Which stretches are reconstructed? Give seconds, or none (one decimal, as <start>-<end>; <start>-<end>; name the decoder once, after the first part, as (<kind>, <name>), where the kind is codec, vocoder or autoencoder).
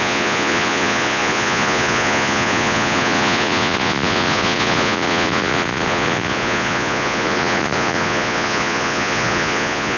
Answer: 0.0-10.0 (vocoder, Vocos)